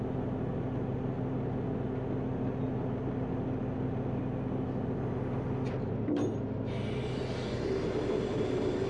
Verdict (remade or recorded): recorded